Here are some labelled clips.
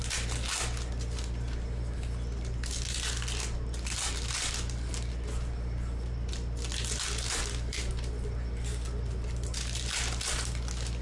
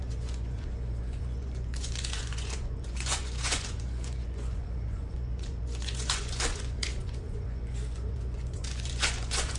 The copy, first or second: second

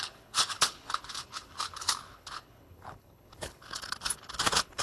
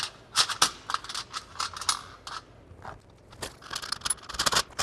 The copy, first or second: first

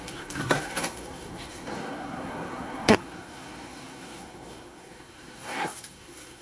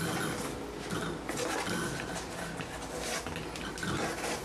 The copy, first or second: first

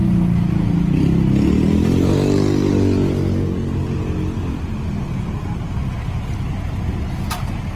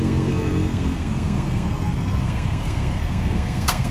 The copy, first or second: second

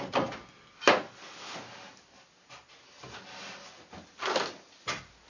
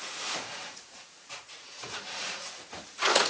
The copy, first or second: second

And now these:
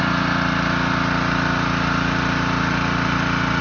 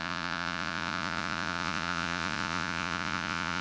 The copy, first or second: second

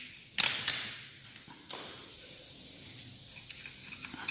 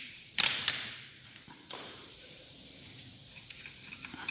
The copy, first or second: second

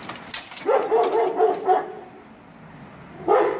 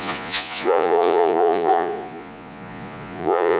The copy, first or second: second